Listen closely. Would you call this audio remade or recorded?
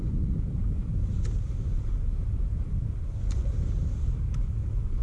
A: recorded